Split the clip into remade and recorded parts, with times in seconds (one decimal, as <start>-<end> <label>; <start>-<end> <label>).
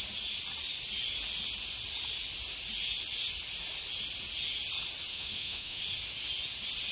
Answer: 0.0-5.1 recorded; 5.1-5.8 remade; 5.8-6.9 recorded